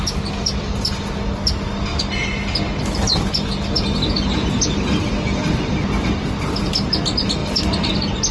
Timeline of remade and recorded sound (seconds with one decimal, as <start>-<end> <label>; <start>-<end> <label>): 0.0-8.3 recorded